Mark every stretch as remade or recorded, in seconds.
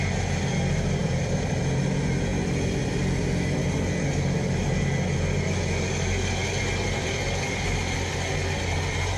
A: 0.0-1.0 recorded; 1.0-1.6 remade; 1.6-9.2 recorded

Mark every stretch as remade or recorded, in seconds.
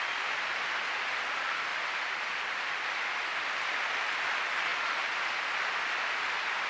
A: 0.0-1.7 recorded; 1.7-3.8 remade; 3.8-6.7 recorded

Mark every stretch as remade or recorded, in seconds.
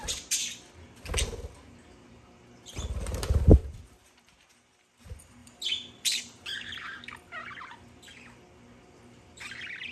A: 0.0-3.6 recorded; 3.6-5.0 remade; 5.0-5.4 recorded; 5.4-7.0 remade; 7.0-9.9 recorded